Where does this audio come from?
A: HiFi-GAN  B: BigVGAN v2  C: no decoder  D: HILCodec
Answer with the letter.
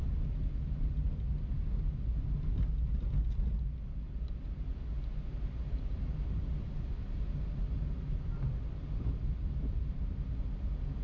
C